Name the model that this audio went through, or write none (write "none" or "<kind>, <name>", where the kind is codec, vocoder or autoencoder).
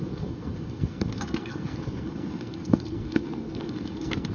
codec, SNAC